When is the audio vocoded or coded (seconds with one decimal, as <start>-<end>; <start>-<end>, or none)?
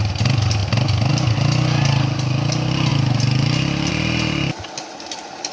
none